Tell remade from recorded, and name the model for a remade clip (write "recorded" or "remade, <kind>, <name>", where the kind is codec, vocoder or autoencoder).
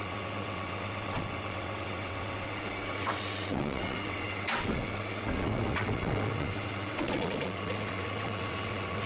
remade, vocoder, WaveNeXt